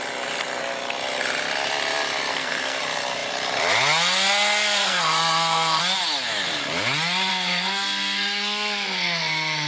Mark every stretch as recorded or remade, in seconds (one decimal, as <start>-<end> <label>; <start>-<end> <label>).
0.0-2.3 recorded; 2.3-2.8 remade; 2.8-4.8 recorded; 4.8-5.8 remade; 5.8-7.3 recorded; 7.3-9.7 remade